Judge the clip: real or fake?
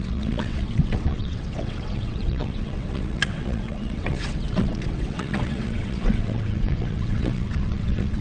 fake